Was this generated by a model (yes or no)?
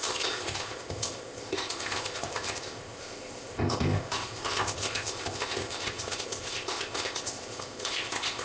yes